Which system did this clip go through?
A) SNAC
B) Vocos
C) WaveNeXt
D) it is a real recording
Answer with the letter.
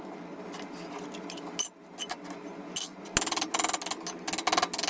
D